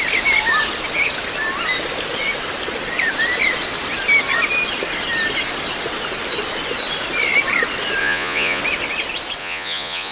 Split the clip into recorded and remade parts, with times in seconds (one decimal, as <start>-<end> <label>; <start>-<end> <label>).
0.0-8.0 recorded; 8.0-8.6 remade; 8.6-9.4 recorded; 9.4-10.1 remade